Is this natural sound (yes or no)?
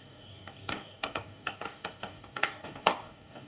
no